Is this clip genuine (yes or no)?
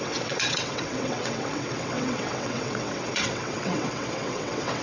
no